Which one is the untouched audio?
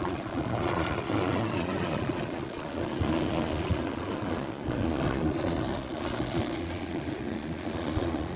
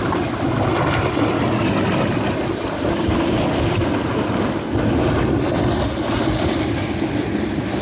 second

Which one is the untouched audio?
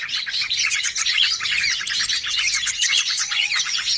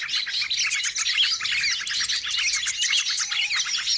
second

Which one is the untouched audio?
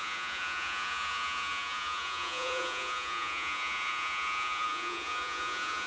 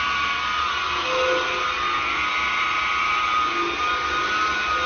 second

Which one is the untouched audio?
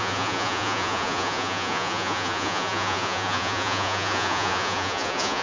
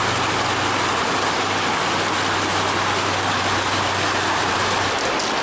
second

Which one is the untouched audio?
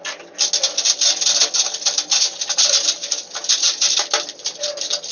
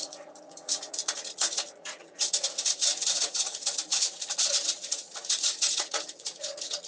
first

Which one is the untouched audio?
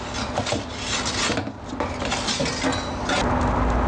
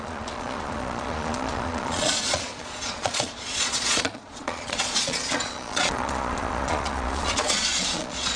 first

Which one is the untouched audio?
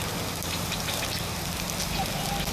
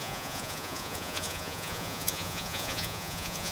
first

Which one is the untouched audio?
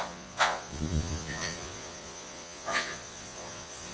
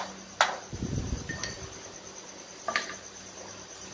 second